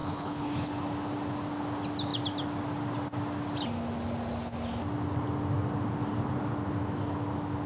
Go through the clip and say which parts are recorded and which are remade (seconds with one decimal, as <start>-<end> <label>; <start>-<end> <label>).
0.0-0.7 remade; 0.7-7.7 recorded